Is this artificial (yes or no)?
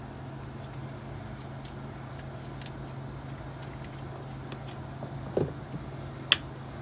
no